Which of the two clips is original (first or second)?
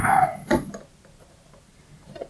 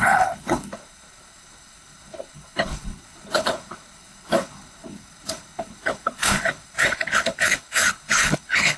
first